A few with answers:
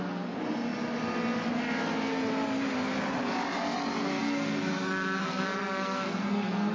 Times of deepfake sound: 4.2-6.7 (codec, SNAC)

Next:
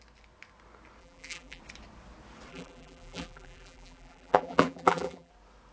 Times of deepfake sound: 1.0-1.6 (vocoder, BigVGAN v2); 2.5-5.3